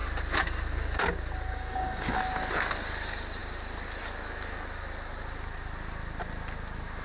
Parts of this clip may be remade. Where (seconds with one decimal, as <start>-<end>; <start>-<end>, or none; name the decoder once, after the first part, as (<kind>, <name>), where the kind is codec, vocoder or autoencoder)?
1.5-2.2 (codec, DAC)